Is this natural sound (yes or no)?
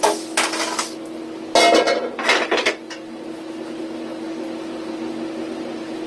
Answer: yes